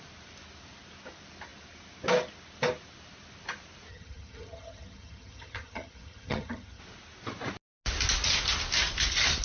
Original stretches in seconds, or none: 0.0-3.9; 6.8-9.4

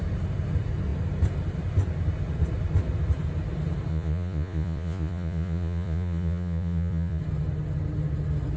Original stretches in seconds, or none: 0.0-3.9; 7.2-8.6

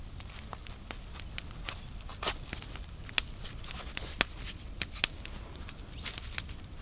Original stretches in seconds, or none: 0.0-6.8

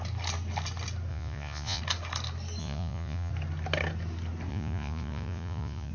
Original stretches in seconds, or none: 0.0-1.1; 1.8-2.6; 3.3-4.5

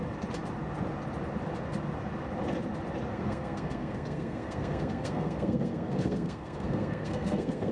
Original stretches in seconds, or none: 0.0-3.1